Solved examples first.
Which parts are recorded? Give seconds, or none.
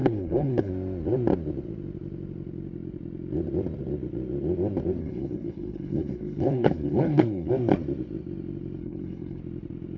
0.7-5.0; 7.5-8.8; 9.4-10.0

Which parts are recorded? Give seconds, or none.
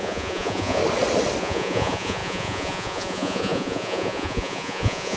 0.8-1.4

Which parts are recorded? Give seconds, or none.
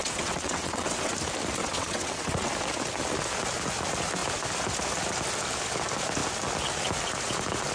1.1-1.6; 2.5-7.7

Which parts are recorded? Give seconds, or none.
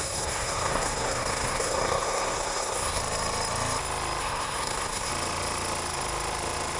3.0-4.2; 5.1-6.8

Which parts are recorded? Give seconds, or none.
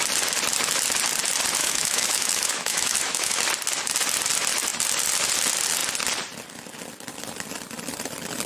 0.0-1.6; 3.4-8.5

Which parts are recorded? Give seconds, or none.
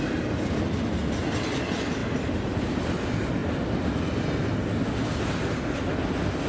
0.0-6.5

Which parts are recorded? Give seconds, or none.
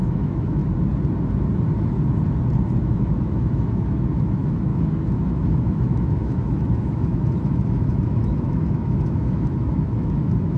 0.6-2.8